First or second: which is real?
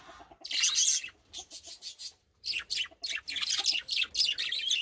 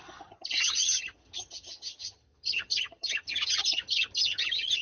first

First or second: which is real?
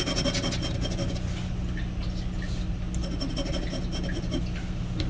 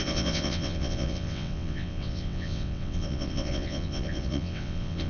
first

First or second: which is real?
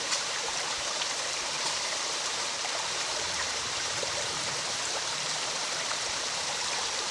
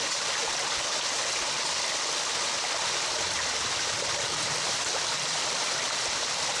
second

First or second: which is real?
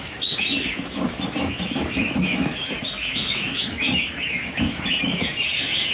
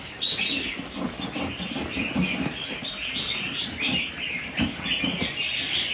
second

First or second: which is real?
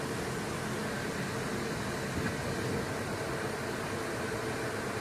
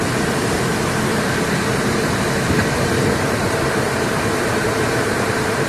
first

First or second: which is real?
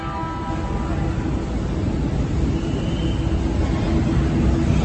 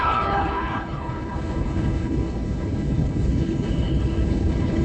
first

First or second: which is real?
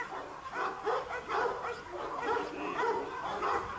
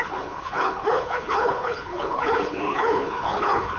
first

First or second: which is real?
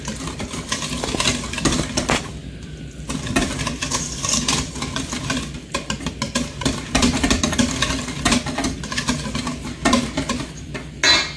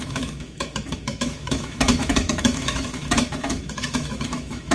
first